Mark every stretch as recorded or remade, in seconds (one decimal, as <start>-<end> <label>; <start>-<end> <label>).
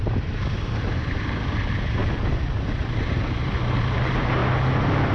0.0-2.0 remade; 2.0-2.5 recorded; 2.5-4.4 remade; 4.4-5.1 recorded